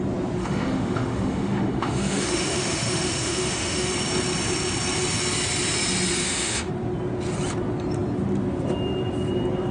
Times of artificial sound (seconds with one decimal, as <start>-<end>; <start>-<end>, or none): 0.4-3.9; 6.2-6.7